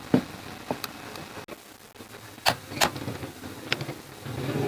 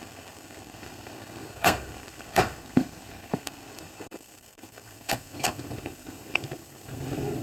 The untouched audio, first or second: first